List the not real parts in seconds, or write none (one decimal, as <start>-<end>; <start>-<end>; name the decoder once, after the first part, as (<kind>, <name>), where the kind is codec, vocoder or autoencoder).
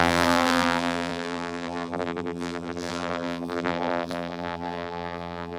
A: 0.0-5.6 (vocoder, BigVGAN v2)